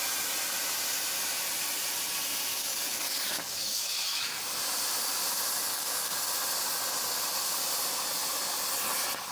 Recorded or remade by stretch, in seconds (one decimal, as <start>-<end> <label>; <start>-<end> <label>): 0.0-2.5 recorded; 2.5-4.4 remade; 4.4-5.7 recorded; 5.7-6.2 remade; 6.2-9.3 recorded